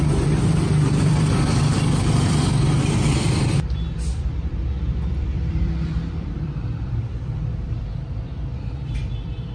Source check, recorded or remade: remade